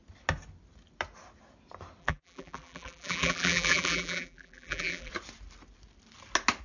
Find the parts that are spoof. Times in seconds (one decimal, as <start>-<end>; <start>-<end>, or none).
2.0-5.1